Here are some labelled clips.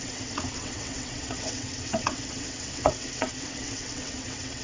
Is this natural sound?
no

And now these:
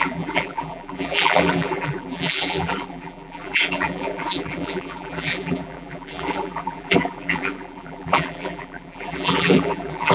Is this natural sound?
no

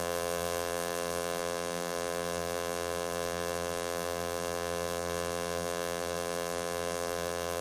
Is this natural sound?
no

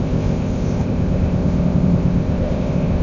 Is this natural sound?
no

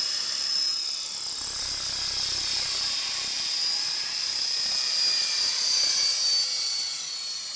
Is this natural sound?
yes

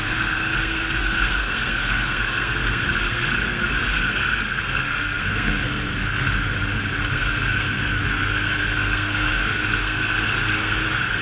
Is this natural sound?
no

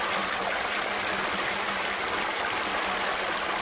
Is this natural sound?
yes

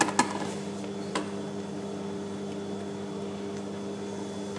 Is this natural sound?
yes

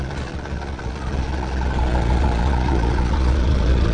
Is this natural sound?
no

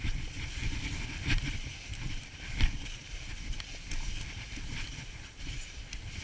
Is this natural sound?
no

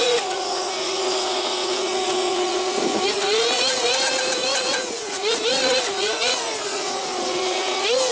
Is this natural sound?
no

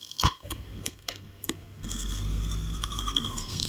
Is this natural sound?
no